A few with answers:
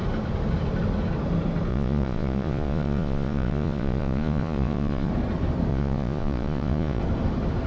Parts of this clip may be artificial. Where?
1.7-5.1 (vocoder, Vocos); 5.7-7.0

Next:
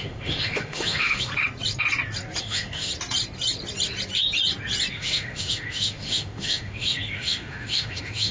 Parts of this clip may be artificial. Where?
0.0-1.3 (autoencoder, DAC-VAE); 2.4-2.9; 4.9-8.3

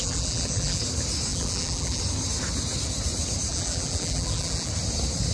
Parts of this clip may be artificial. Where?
0.0-0.8 (vocoder, BigVGAN v2); 1.3-2.0; 3.5-4.7

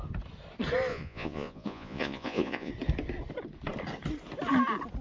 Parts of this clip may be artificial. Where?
0.9-2.7 (vocoder, Vocos)

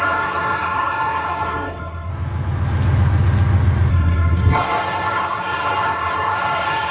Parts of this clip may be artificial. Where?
0.0-2.1 (codec, SNAC); 3.9-6.9

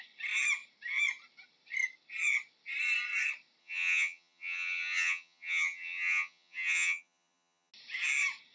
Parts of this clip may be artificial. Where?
3.6-7.7 (vocoder, HiFi-GAN)

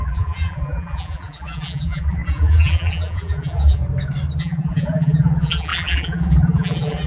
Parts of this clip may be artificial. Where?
0.0-3.8 (vocoder, BigVGAN v2); 4.4-7.1